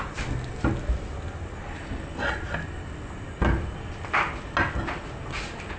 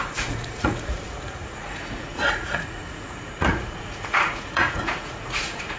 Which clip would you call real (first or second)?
first